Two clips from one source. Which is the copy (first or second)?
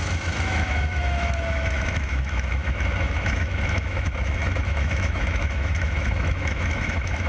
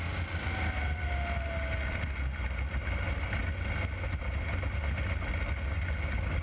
first